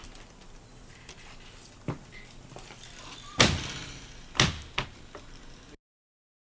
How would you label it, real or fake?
real